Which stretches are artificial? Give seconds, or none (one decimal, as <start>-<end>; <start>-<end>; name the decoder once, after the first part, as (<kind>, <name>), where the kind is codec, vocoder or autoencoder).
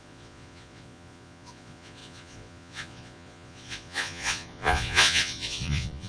0.0-6.1 (vocoder, Vocos)